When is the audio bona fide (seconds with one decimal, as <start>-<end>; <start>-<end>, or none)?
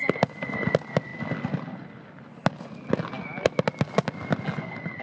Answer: 0.0-5.0